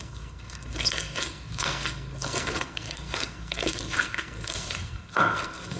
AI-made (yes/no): yes